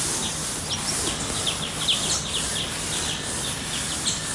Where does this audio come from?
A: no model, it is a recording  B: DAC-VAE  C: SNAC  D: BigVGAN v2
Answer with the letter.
A